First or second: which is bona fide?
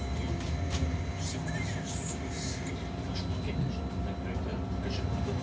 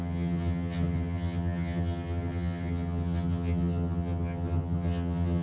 first